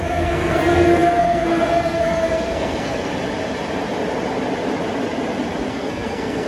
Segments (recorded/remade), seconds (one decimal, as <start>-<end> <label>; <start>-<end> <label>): 0.0-3.1 remade; 3.1-5.7 recorded; 5.7-6.5 remade